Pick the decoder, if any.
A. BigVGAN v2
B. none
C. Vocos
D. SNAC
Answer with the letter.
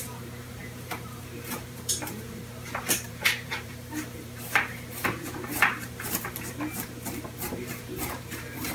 A